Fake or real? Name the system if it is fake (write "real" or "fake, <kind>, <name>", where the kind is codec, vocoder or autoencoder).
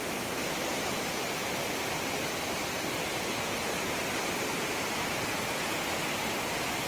real